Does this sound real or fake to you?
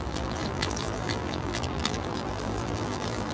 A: fake